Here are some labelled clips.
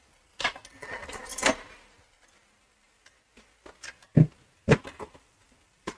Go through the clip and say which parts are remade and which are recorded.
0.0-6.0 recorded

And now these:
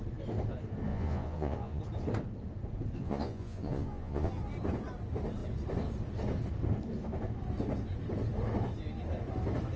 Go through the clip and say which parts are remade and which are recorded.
0.0-0.9 recorded; 0.9-1.8 remade; 1.8-3.0 recorded; 3.0-4.3 remade; 4.3-9.8 recorded

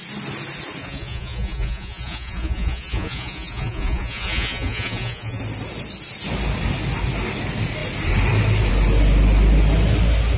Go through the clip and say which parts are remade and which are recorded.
0.0-0.8 recorded; 0.8-5.4 remade; 5.4-10.4 recorded